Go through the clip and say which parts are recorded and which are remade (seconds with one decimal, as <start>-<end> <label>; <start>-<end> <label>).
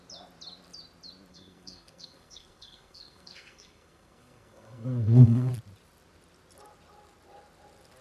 0.0-1.3 recorded; 1.3-5.5 remade; 5.5-8.0 recorded